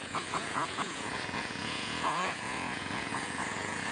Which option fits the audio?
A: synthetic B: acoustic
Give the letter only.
A